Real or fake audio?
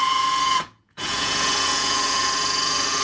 fake